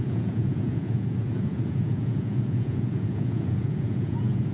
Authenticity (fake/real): fake